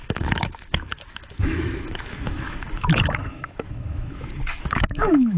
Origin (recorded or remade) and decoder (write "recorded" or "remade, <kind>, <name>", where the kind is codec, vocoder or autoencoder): remade, autoencoder, DAC-VAE